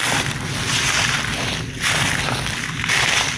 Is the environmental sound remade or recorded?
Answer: recorded